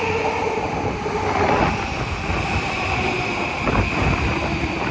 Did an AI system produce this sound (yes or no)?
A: no